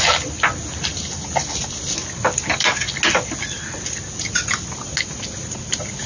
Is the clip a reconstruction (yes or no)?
no